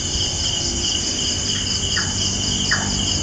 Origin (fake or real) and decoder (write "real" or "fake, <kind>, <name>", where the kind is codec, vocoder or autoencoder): real